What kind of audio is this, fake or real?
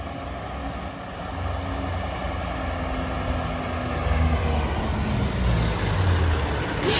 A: real